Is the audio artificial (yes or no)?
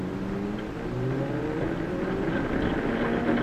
no